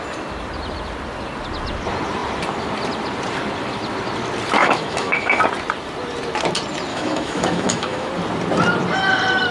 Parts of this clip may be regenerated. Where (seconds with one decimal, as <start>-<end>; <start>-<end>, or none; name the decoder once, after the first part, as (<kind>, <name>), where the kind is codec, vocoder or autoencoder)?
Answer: 4.6-5.4 (autoencoder, DAC-VAE); 6.9-8.1